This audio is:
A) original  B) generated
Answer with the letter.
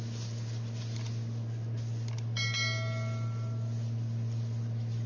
A